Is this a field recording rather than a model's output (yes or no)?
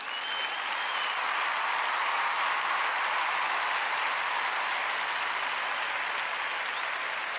yes